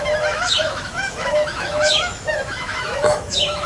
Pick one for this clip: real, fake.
fake